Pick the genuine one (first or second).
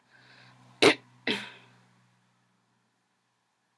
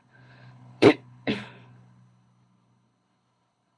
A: first